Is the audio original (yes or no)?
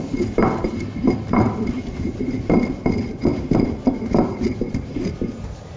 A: yes